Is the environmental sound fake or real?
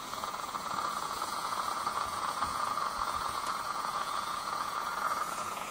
fake